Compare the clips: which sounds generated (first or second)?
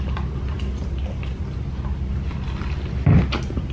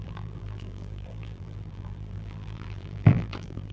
second